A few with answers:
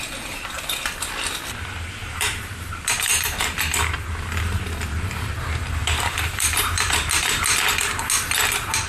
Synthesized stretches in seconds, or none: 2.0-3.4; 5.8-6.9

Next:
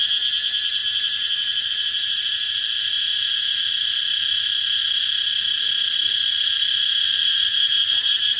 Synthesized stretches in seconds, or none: none

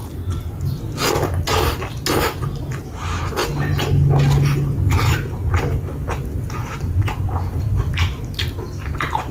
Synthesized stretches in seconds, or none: none